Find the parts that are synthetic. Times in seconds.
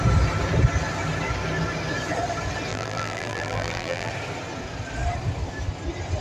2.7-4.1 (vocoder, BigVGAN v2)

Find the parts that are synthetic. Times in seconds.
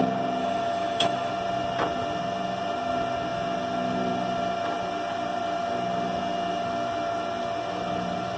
0.4-1.3 (autoencoder, DAC-VAE)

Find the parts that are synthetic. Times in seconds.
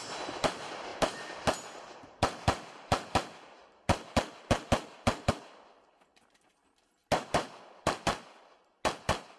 none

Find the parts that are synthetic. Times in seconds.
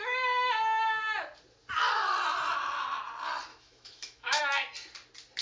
3.5-4.4 (autoencoder, DAC-VAE)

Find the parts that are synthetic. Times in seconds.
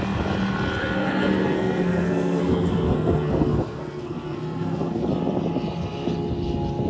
1.0-5.1 (codec, SNAC)